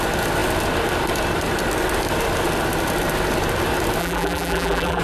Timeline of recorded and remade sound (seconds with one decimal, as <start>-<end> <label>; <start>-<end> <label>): 0.0-4.0 recorded; 4.0-5.0 remade